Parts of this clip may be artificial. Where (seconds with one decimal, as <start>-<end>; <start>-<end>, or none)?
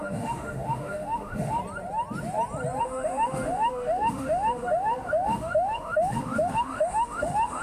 0.0-1.6; 2.8-7.6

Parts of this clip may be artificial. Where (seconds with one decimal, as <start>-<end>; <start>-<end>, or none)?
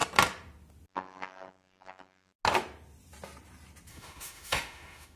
3.9-5.2